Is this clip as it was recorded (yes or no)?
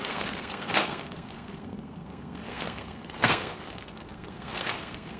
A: no